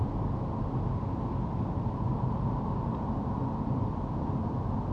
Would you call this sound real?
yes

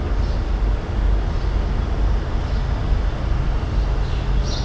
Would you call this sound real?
yes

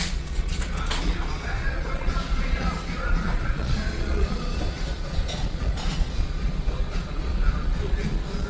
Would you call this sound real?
no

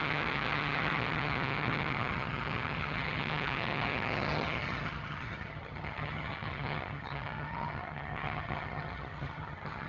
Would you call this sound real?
no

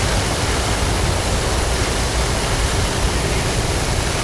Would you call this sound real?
yes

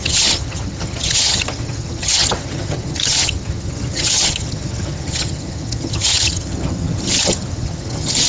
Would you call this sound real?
no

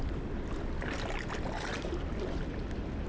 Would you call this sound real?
yes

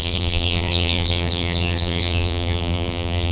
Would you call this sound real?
no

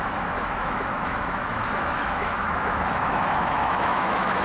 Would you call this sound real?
no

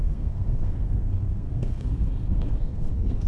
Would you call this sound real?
no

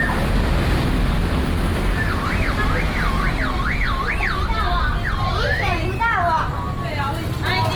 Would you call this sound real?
yes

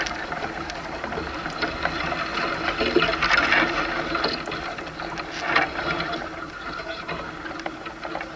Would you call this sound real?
yes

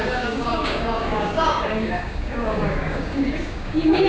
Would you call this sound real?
no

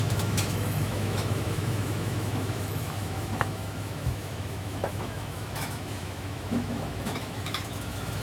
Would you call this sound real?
no